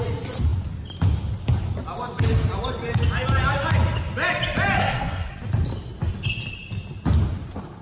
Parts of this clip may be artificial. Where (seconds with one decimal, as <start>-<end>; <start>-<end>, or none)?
4.8-5.3

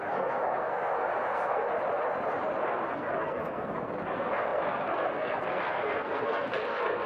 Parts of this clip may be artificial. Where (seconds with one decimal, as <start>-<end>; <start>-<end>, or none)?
0.0-1.7; 2.6-7.1

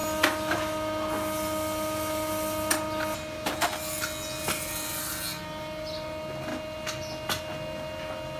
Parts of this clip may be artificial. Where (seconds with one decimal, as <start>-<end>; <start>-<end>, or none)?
none

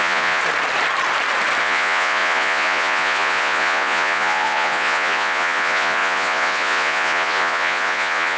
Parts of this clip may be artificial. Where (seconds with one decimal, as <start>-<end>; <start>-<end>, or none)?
0.0-0.4; 1.6-8.4

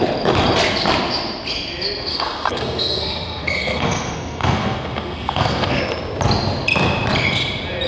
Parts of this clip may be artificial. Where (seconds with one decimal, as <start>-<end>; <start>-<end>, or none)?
2.1-5.8

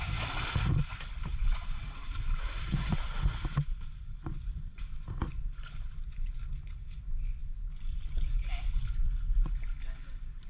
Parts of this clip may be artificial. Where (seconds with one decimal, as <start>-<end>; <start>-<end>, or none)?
1.3-3.2

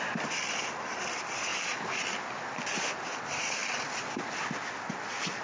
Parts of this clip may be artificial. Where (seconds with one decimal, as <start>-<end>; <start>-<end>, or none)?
none

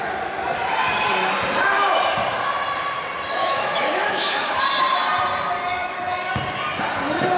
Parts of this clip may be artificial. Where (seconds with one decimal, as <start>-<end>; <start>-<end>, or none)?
3.4-4.6; 5.8-6.3